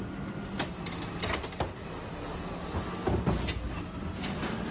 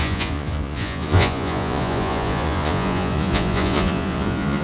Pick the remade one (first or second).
second